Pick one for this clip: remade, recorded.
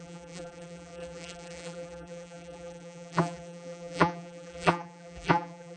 remade